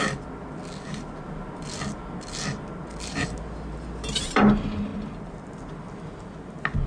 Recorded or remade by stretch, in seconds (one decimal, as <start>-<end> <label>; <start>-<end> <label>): 0.0-6.9 recorded